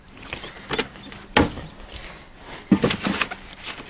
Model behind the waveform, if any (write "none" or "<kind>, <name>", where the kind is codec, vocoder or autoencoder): none